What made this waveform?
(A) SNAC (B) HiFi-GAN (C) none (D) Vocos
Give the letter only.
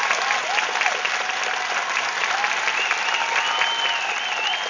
C